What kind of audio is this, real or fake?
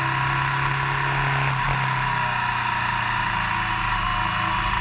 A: real